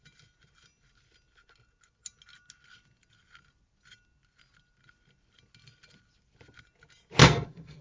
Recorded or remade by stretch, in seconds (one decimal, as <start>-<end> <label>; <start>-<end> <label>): 0.0-7.2 recorded; 7.2-7.8 remade